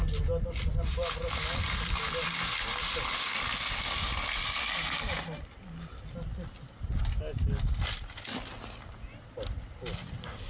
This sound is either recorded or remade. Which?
recorded